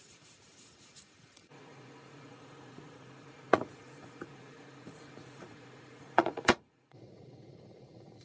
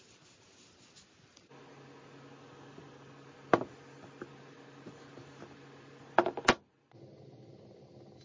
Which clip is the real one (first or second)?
second